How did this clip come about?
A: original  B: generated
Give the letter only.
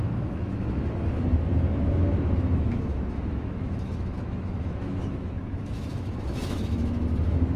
B